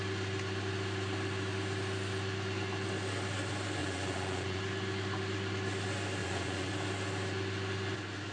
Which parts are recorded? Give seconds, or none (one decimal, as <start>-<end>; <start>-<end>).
0.0-3.8; 4.6-6.2; 6.7-8.3